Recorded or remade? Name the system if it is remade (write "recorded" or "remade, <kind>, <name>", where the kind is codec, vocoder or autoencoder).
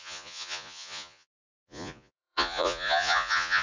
remade, vocoder, Vocos